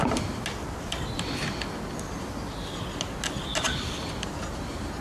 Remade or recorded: recorded